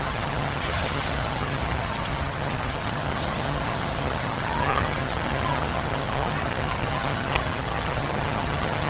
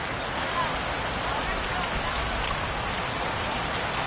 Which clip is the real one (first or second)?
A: second